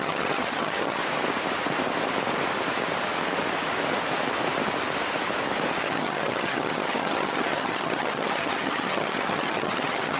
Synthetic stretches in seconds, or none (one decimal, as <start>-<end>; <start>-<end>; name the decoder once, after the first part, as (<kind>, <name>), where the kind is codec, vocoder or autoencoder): 0.0-1.0 (vocoder, HiFi-GAN); 5.8-10.2